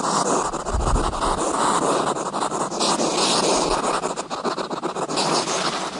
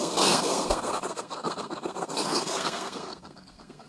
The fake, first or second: second